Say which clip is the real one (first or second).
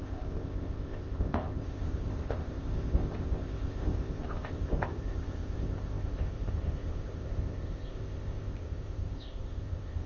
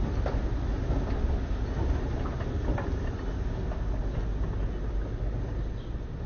second